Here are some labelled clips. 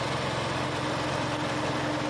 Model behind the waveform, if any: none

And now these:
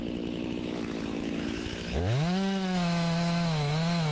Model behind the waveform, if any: autoencoder, DAC-VAE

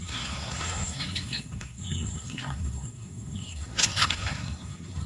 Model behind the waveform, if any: codec, SNAC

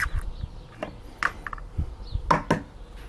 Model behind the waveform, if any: none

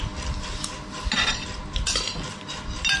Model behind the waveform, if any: none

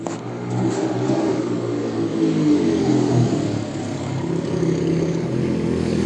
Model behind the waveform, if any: codec, DAC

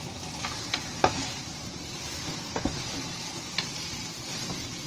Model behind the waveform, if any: vocoder, BigVGAN v2